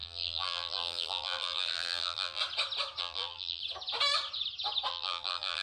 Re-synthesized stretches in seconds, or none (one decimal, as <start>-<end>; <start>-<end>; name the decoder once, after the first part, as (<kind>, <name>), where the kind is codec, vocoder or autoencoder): 0.0-2.4 (vocoder, BigVGAN v2); 3.0-3.6; 4.9-5.6